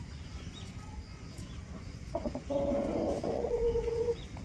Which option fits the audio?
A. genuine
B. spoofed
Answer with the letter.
B